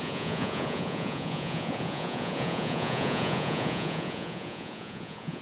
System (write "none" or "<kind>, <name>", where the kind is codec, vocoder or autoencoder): vocoder, Vocos